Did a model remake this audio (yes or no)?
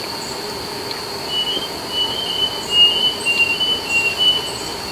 no